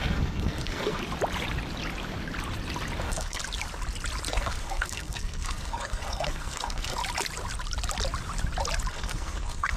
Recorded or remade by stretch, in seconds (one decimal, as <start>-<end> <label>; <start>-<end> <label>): 0.0-1.0 remade; 1.0-3.0 recorded; 3.0-3.4 remade; 3.4-4.3 recorded; 4.3-7.0 remade; 7.0-8.9 recorded; 8.9-9.8 remade